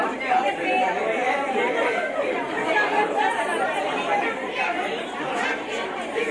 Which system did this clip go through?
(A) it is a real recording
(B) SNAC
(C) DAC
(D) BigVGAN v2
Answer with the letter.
D